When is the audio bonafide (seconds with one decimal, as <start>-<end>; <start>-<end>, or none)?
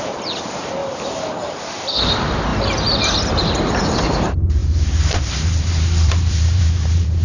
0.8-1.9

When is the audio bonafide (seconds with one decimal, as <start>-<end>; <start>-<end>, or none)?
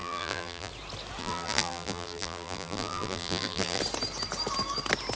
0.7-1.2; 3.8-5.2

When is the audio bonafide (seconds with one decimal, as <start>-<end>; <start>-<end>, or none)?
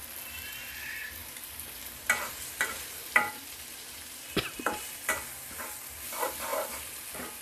0.0-1.2; 4.8-7.4